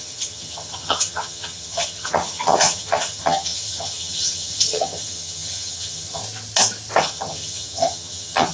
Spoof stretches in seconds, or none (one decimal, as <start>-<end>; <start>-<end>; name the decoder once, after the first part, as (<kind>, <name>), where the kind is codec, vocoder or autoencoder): 0.0-6.2 (vocoder, HiFi-GAN); 7.0-8.5